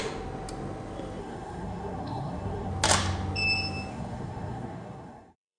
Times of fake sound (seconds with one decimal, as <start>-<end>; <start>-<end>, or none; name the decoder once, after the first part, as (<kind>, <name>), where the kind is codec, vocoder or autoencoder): 1.2-2.7 (codec, SNAC); 3.9-5.6